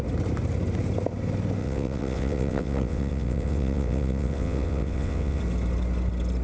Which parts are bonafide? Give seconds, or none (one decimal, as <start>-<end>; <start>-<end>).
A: 0.0-1.6; 5.4-6.4